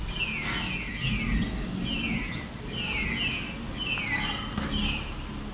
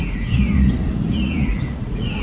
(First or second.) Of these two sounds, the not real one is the second